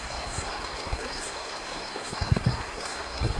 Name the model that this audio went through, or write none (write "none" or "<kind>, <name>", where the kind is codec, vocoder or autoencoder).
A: codec, SNAC